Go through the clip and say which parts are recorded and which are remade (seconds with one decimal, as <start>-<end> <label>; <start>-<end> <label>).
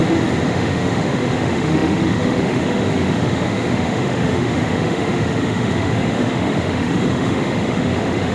0.0-0.5 recorded; 0.5-8.3 remade